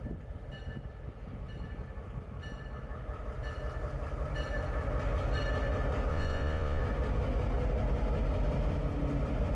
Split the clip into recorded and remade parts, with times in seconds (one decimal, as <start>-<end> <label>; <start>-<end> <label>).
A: 0.0-6.1 recorded; 6.1-6.8 remade; 6.8-9.6 recorded

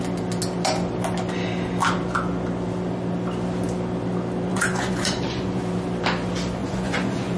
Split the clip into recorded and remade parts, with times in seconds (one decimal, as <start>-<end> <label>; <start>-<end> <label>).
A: 0.0-4.5 recorded; 4.5-5.6 remade; 5.6-6.6 recorded; 6.6-7.4 remade

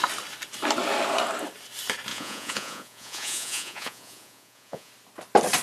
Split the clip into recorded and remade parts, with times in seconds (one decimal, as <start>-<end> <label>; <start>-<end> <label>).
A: 0.0-2.1 recorded; 2.1-4.9 remade; 4.9-5.6 recorded

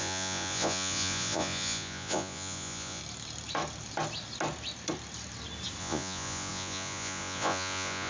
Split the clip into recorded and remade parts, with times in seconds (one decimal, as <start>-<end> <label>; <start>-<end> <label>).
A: 0.0-3.0 remade; 3.0-5.8 recorded; 5.8-8.1 remade